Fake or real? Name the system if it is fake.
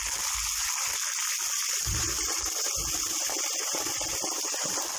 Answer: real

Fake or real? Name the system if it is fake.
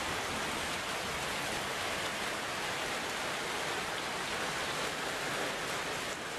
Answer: real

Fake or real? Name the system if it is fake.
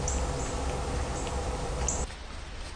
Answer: real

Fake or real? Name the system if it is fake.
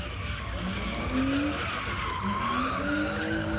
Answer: real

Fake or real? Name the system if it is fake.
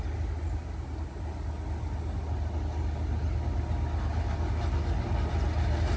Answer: real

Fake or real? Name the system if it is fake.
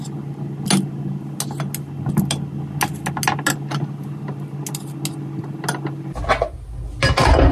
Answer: real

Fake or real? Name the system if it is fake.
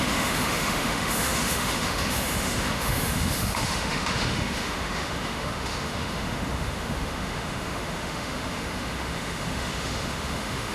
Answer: fake, autoencoder, DAC-VAE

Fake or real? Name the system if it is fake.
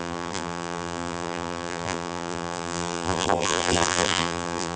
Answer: fake, vocoder, BigVGAN v2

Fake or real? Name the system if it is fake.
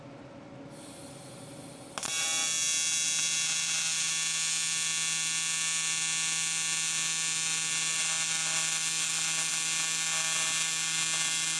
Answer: real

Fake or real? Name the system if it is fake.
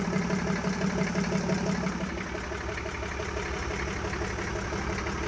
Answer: real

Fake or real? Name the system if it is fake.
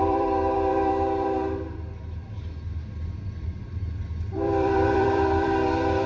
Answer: fake, vocoder, BigVGAN v2